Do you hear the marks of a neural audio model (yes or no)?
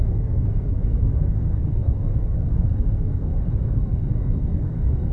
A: yes